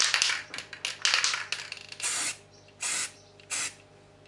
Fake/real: real